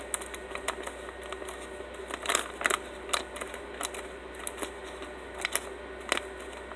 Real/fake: real